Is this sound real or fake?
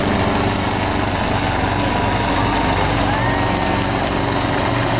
real